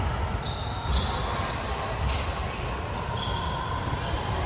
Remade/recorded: recorded